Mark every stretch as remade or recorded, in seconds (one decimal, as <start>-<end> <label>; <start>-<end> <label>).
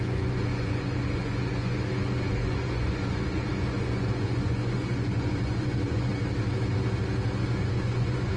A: 0.0-6.1 remade; 6.1-7.6 recorded; 7.6-8.4 remade